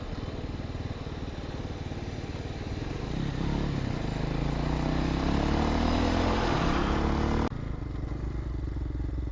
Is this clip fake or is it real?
real